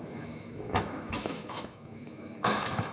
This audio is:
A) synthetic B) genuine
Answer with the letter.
A